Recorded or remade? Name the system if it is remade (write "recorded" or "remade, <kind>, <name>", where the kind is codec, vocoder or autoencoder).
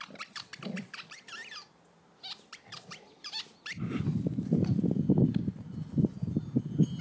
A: remade, vocoder, BigVGAN v2